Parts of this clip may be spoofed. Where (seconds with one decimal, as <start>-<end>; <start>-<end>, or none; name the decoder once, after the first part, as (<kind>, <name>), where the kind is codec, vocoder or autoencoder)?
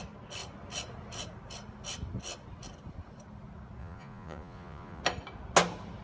3.8-5.0 (vocoder, Vocos)